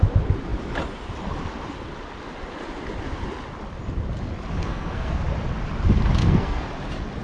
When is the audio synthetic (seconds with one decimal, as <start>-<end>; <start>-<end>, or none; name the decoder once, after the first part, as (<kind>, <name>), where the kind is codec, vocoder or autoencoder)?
4.6-5.2 (codec, SNAC); 6.2-6.7